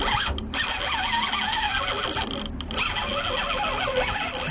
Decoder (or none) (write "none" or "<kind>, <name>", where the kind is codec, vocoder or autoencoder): none